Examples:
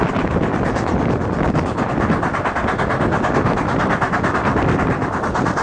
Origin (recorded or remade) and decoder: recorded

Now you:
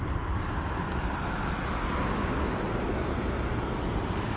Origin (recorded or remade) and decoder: recorded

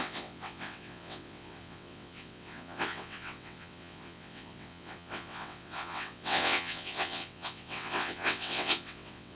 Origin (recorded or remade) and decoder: remade, vocoder, WaveNeXt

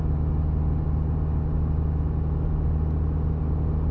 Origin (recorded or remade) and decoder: recorded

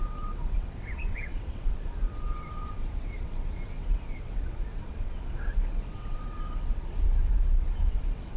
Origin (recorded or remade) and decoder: remade, vocoder, WaveNeXt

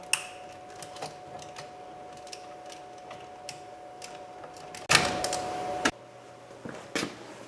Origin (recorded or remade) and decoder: recorded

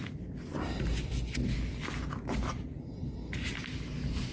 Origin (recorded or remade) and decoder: recorded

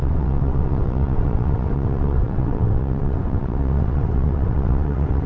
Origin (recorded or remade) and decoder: remade, vocoder, WaveNeXt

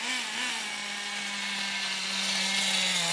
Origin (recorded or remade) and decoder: recorded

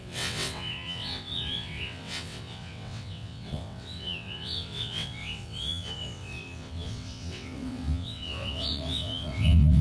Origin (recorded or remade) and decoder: remade, vocoder, WaveNeXt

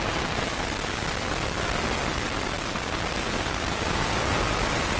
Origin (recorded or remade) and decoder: recorded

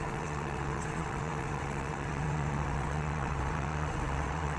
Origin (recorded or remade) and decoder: remade, vocoder, WaveNeXt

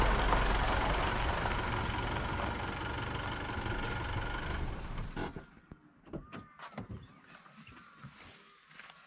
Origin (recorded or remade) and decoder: recorded